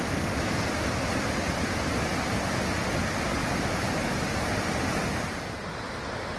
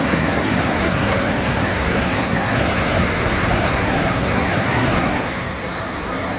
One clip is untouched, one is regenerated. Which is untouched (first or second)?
first